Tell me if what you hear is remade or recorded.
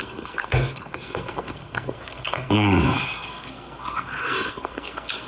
remade